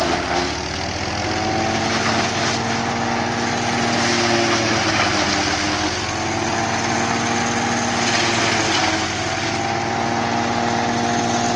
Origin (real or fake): real